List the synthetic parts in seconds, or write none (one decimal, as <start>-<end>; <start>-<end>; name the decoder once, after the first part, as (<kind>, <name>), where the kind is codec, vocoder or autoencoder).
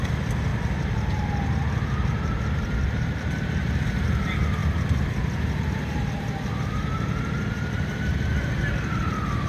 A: 0.5-3.8 (vocoder, BigVGAN v2)